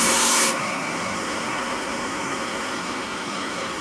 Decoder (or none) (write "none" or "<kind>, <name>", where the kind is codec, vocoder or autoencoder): codec, SNAC